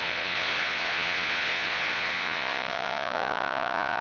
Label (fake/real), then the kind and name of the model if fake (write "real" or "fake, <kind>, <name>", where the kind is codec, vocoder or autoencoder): fake, vocoder, Vocos